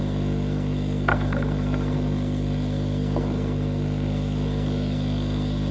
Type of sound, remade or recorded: remade